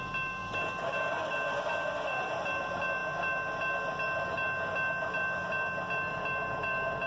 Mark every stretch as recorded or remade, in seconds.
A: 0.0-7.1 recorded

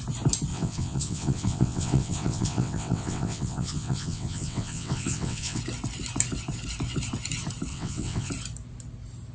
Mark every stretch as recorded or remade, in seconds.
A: 0.0-0.5 recorded; 0.5-5.6 remade; 5.6-7.7 recorded; 7.7-8.3 remade; 8.3-9.3 recorded

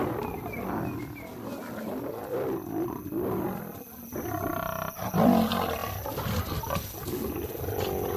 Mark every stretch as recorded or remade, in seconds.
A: 0.0-8.2 recorded

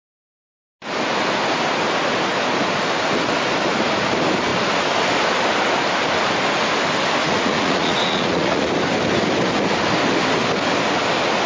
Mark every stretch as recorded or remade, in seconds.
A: 0.0-7.2 recorded; 7.2-8.7 remade; 8.7-11.5 recorded

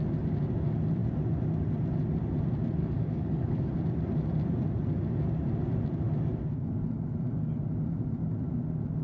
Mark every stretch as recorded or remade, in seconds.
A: 0.0-2.8 recorded; 2.8-3.7 remade; 3.7-9.0 recorded

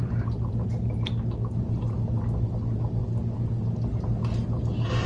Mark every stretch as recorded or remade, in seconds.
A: 0.0-5.1 recorded

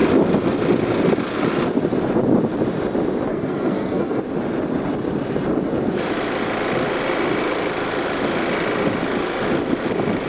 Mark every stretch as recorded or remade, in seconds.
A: 0.0-3.3 recorded; 3.3-4.2 remade; 4.2-10.3 recorded

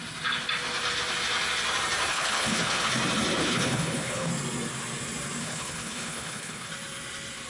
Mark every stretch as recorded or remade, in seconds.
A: 0.0-2.1 recorded; 2.1-2.9 remade; 2.9-3.4 recorded; 3.4-4.3 remade; 4.3-5.4 recorded; 5.4-6.7 remade; 6.7-7.5 recorded